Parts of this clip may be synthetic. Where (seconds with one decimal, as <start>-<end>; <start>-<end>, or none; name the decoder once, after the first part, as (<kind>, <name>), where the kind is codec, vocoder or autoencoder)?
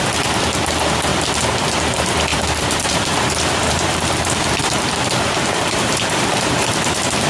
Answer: 2.3-6.7 (vocoder, BigVGAN v2)